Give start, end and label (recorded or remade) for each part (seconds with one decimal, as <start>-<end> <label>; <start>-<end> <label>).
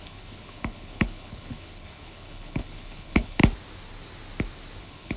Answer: 0.0-3.4 remade; 3.4-4.8 recorded; 4.8-5.2 remade